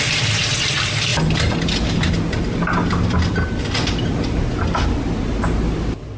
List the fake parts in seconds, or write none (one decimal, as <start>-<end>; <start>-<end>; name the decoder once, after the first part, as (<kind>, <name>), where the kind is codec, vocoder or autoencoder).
none